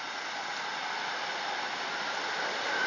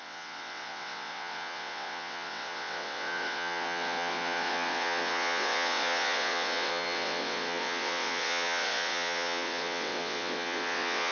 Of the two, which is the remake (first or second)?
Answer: second